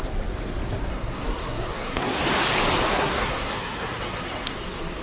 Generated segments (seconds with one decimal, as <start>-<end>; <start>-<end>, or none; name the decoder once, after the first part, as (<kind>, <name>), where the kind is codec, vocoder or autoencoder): 0.9-2.2 (codec, SNAC); 2.9-5.0